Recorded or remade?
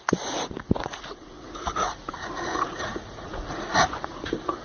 remade